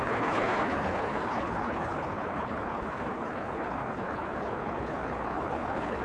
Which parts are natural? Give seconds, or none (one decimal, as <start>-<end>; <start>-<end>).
none